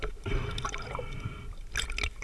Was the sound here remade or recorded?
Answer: recorded